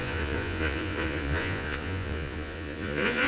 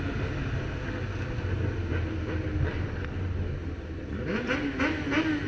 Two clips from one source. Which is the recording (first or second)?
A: second